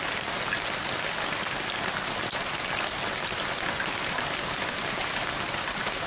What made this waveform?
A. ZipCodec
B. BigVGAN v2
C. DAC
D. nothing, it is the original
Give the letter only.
D